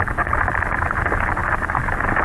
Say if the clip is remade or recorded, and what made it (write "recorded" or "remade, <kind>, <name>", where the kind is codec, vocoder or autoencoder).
recorded